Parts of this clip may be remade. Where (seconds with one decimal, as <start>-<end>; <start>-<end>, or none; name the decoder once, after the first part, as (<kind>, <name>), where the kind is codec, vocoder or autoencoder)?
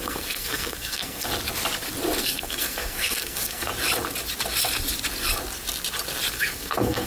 0.0-1.3 (codec, SNAC); 2.2-3.7; 6.3-7.1